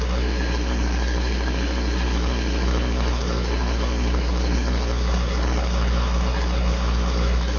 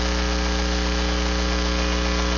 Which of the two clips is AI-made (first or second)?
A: first